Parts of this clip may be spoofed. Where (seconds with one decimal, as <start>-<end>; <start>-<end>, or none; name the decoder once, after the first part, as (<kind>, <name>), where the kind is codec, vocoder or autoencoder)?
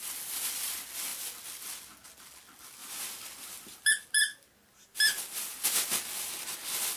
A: 2.8-3.9 (vocoder, BigVGAN v2)